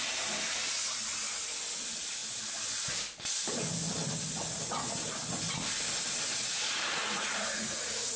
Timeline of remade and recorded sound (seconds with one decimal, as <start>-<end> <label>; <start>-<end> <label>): 0.0-6.3 recorded; 6.3-8.2 remade